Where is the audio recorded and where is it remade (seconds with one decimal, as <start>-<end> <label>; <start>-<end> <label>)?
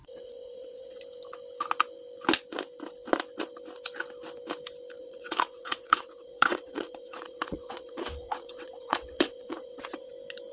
0.0-1.0 remade; 1.0-5.0 recorded; 5.0-10.1 remade; 10.1-10.5 recorded